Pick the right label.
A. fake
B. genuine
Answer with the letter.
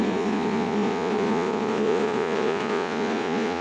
A